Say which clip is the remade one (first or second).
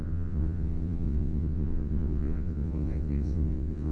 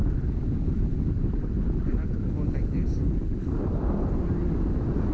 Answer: first